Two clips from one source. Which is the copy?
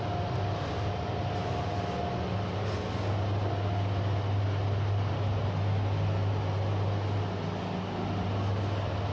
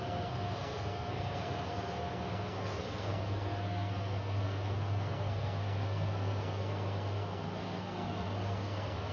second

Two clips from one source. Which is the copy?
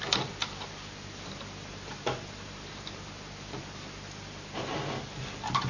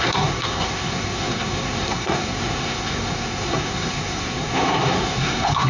second